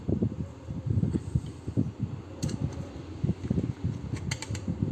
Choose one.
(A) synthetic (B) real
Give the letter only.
B